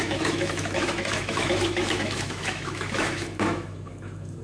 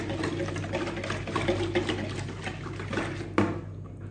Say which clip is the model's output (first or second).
first